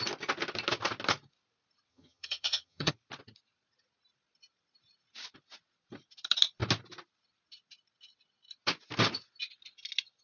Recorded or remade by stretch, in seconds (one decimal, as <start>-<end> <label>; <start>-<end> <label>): 0.0-1.9 recorded; 1.9-2.9 remade; 2.9-10.2 recorded